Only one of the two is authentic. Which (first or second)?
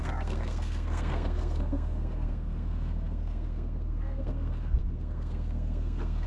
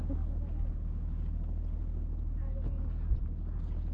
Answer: second